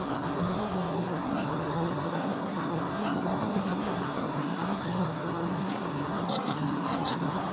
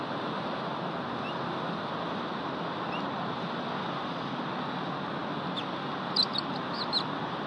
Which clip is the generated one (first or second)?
first